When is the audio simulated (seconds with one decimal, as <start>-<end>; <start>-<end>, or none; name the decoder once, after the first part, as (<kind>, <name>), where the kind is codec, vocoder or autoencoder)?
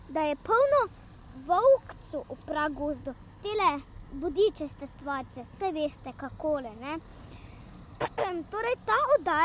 none